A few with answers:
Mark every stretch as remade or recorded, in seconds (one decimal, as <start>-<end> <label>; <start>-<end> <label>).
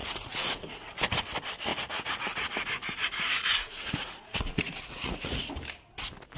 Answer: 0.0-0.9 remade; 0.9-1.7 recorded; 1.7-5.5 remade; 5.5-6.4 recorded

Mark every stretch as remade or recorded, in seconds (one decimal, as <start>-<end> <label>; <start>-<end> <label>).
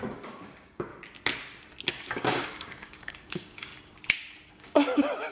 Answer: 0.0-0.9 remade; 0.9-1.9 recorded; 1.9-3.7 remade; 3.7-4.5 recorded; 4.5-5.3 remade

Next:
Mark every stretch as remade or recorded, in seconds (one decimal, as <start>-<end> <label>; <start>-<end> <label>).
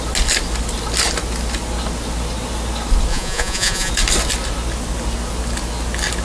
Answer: 0.0-3.1 recorded; 3.1-3.9 remade; 3.9-6.2 recorded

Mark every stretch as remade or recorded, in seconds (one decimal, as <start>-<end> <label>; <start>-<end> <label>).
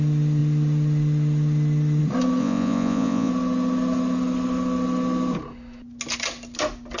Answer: 0.0-2.4 recorded; 2.4-3.3 remade; 3.3-7.0 recorded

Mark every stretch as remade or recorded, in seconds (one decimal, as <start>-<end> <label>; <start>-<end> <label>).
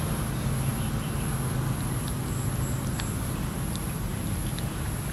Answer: 0.0-5.1 recorded